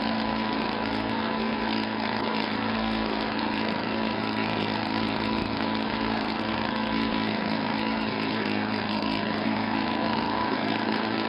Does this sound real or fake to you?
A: fake